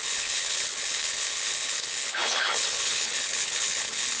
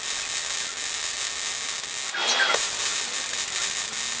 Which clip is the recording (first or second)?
second